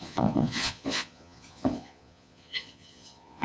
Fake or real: fake